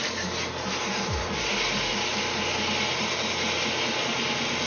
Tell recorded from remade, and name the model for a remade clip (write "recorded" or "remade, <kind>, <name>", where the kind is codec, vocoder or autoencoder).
recorded